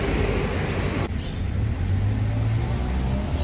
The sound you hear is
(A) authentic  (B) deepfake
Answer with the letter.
A